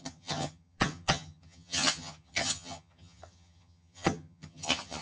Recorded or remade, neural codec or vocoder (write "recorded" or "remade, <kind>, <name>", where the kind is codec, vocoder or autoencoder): remade, vocoder, HiFi-GAN